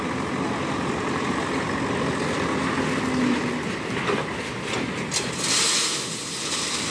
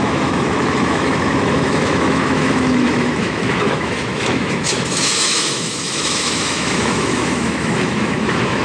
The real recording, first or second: first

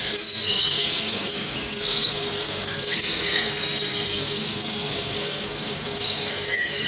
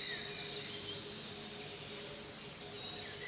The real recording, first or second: second